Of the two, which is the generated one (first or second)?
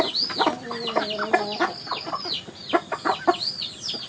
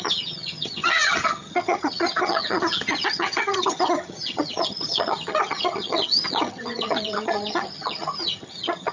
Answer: second